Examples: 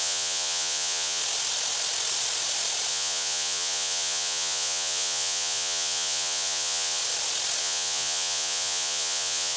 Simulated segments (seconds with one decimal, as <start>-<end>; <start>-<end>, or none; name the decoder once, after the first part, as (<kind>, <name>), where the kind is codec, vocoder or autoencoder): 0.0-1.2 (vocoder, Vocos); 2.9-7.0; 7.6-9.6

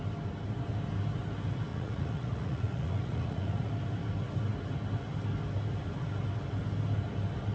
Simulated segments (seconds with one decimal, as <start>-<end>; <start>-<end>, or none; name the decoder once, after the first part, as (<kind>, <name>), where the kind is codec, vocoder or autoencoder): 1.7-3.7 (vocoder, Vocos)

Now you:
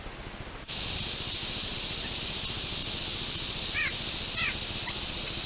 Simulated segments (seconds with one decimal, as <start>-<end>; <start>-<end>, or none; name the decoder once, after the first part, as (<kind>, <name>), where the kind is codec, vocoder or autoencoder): none

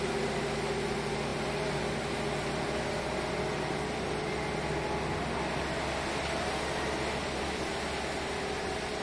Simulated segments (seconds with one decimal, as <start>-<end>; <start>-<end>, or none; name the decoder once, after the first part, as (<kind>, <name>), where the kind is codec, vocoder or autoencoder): none

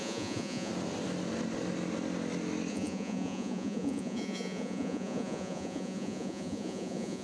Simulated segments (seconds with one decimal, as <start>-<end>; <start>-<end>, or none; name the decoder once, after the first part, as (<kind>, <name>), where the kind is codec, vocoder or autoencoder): 0.0-0.7 (vocoder, Vocos); 2.7-7.2

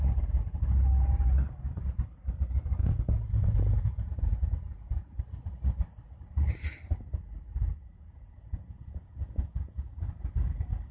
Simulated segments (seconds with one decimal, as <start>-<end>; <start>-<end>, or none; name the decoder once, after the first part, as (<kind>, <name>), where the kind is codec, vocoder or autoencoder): 2.8-5.2 (vocoder, Vocos); 7.7-10.0

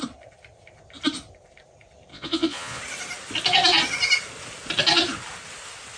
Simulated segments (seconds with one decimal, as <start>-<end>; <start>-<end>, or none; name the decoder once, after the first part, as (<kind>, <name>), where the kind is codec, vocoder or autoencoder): 2.1-2.8 (vocoder, Vocos)